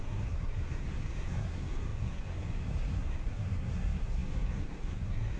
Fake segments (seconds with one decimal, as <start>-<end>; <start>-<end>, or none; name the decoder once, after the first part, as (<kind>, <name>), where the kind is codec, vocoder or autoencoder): 0.0-5.4 (codec, SNAC)